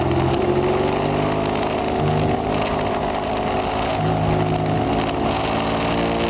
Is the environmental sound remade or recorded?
recorded